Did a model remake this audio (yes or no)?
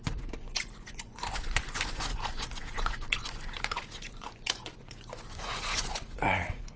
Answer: yes